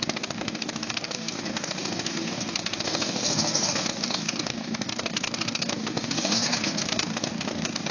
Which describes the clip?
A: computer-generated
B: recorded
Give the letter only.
A